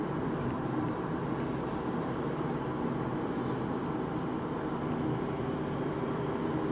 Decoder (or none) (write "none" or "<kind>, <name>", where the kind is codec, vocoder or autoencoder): none